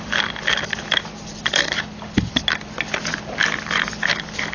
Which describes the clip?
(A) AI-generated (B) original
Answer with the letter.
B